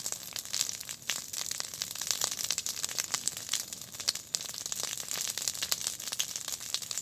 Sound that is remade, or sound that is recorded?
recorded